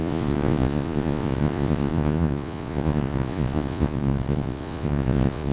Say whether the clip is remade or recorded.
remade